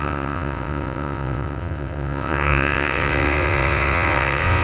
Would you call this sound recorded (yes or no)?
no